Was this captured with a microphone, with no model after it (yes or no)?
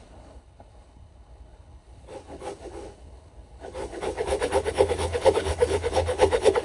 no